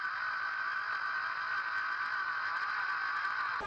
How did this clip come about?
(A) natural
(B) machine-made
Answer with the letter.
A